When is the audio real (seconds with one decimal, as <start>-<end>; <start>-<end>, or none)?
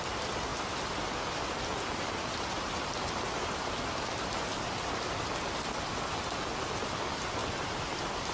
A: 0.0-8.3